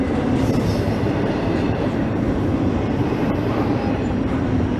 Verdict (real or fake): fake